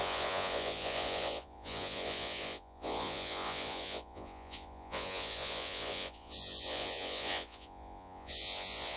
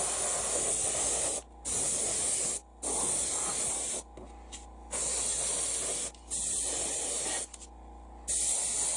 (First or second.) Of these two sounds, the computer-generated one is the first